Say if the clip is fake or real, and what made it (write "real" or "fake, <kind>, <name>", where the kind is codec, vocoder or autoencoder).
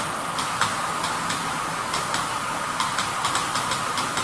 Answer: real